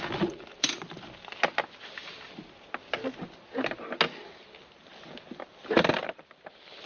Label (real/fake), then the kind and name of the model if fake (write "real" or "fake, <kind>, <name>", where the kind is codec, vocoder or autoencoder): real